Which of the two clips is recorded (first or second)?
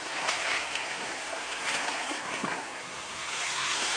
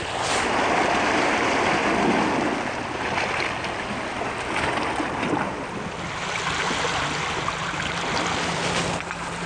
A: second